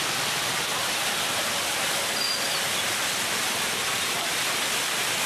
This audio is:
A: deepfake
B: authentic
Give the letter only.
B